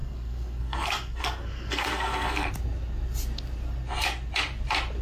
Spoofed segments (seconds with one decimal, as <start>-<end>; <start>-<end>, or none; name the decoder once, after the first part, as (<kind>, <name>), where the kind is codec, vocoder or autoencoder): 0.0-2.5 (codec, SNAC)